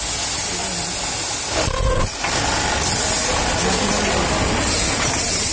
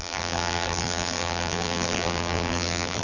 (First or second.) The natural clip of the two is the first